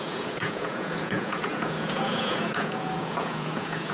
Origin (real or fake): fake